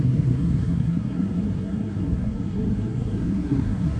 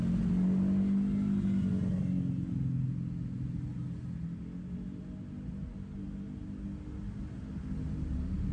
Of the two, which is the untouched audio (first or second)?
second